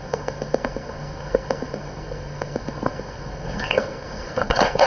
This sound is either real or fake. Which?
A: fake